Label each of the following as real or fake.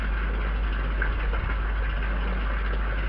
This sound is real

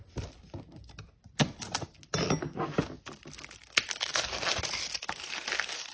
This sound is real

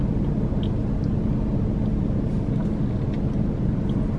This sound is real